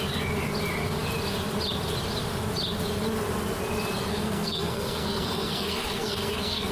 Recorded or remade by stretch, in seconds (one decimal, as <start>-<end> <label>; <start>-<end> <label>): 0.0-4.1 recorded; 4.1-6.7 remade